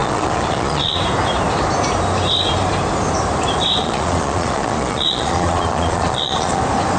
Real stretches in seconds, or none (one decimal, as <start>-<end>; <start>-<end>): 1.0-3.8; 6.6-7.0